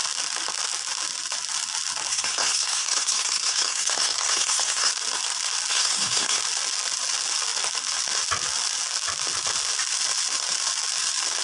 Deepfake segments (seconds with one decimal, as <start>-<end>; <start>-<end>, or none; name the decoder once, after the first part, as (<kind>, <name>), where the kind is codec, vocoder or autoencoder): 2.1-4.9 (codec, SNAC); 5.7-6.4